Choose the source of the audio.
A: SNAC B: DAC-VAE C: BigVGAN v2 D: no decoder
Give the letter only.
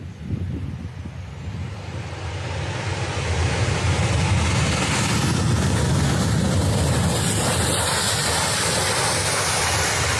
D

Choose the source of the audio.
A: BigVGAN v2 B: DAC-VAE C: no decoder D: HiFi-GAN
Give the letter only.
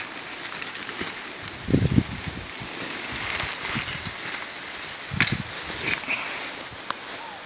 C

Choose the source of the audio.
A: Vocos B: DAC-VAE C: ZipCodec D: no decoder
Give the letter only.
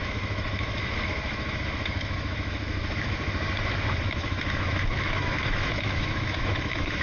B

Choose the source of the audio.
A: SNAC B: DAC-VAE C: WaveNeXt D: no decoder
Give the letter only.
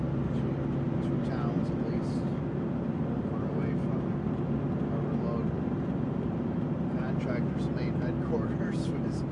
D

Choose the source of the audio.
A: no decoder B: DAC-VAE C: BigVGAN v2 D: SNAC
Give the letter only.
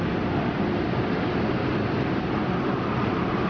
A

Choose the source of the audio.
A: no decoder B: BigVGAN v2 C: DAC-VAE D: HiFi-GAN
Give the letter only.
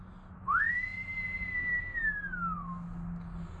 A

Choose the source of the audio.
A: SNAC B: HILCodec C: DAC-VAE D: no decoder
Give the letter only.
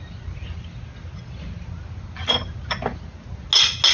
D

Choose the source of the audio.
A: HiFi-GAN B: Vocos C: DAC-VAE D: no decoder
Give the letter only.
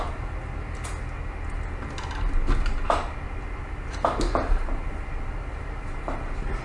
D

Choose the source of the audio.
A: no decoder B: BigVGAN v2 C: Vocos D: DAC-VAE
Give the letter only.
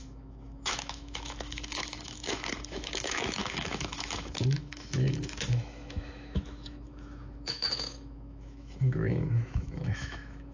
D